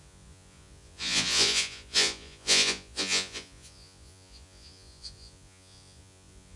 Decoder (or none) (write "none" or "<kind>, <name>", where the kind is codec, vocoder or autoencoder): vocoder, Vocos